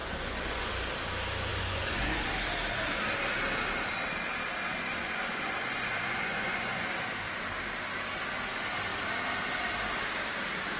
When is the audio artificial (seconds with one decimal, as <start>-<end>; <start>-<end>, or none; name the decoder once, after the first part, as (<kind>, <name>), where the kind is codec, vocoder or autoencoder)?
0.0-0.7 (vocoder, Vocos); 1.5-2.3; 4.7-6.8